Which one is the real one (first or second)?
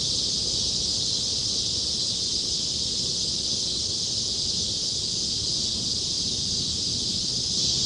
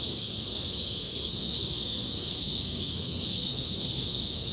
first